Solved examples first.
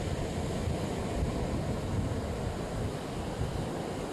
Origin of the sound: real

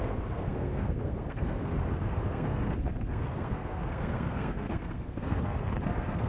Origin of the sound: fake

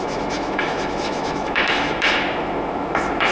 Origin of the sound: fake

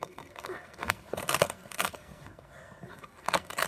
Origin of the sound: fake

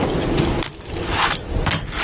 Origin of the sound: real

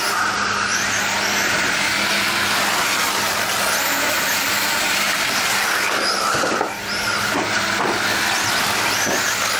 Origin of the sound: real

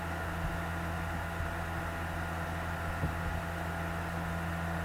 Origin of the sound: real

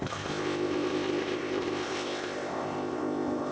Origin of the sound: fake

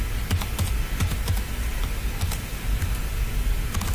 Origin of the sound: real